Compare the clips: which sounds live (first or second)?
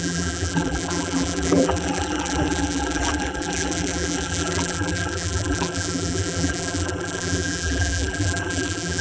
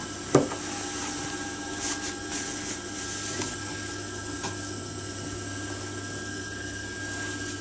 second